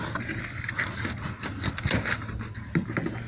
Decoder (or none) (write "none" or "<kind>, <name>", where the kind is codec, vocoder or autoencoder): none